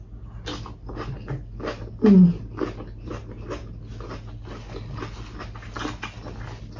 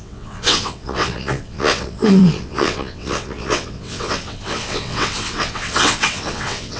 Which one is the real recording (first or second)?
first